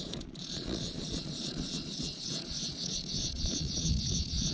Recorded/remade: remade